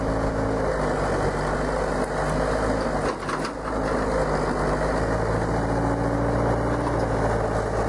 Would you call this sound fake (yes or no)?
no